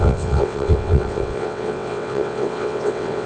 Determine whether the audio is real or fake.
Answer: fake